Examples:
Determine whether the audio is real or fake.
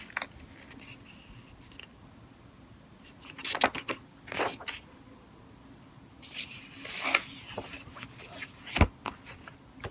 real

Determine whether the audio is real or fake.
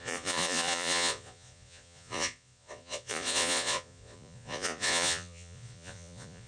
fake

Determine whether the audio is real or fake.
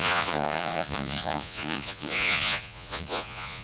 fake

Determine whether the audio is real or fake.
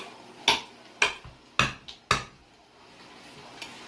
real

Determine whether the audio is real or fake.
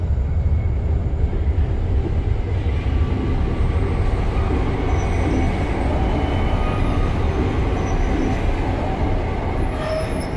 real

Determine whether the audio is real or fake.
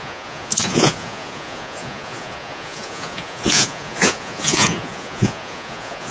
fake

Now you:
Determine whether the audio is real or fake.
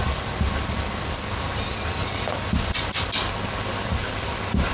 real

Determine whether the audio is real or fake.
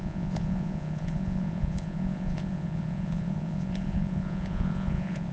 fake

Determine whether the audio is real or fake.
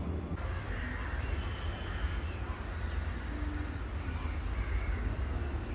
real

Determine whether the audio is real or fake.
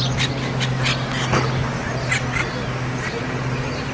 real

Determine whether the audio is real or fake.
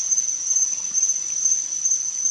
real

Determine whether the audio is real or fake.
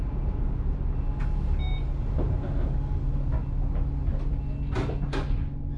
real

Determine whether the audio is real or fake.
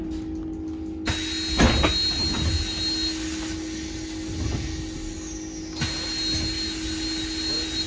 real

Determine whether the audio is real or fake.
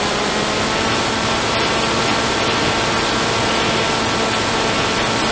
real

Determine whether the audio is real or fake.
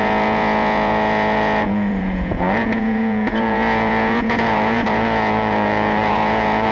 fake